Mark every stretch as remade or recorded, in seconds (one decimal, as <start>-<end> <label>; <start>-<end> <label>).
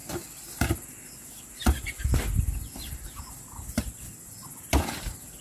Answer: 0.0-5.4 recorded